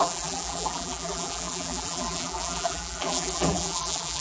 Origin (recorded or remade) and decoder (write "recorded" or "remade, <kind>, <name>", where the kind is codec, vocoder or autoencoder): remade, vocoder, BigVGAN v2